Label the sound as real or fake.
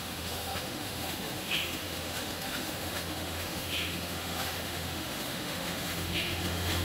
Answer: fake